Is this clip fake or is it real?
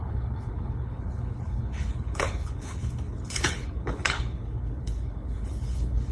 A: fake